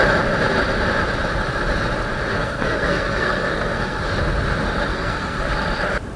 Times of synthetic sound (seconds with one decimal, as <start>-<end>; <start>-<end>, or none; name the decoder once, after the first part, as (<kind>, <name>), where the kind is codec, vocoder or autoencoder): 2.3-4.0 (codec, SNAC); 4.9-5.4